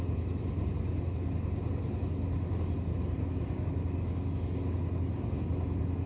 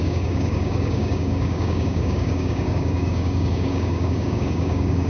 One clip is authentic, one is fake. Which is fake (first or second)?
second